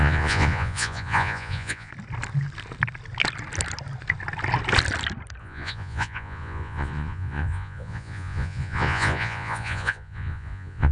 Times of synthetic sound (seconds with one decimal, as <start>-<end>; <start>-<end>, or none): 0.0-1.9; 5.4-10.9